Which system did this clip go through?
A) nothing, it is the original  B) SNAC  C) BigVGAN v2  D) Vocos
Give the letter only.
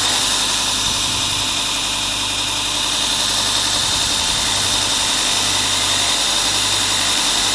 A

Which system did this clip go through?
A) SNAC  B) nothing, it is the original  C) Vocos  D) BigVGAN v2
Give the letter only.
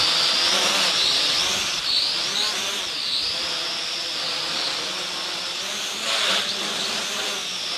B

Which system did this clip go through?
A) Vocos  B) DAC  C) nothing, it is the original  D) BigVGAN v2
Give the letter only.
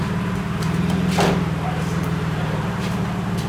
D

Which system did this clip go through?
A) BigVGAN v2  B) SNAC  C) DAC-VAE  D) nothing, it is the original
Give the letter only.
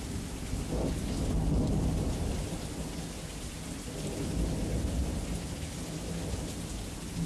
D